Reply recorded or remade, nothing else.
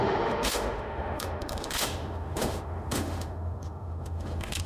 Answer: remade